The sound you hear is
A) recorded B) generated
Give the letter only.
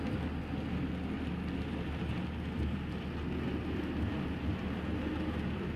A